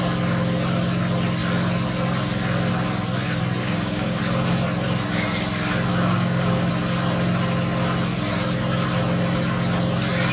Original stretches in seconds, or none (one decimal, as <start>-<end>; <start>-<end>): 0.0-3.6; 4.2-5.9; 6.7-10.3